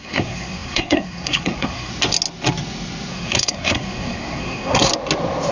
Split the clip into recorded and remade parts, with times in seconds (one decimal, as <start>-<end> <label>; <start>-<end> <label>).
0.0-1.9 remade; 1.9-3.1 recorded; 3.1-4.9 remade; 4.9-5.5 recorded